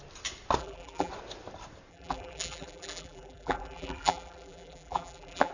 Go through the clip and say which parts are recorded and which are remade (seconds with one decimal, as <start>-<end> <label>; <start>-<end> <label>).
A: 0.0-0.6 recorded; 0.6-1.1 remade; 1.1-1.9 recorded; 1.9-5.5 remade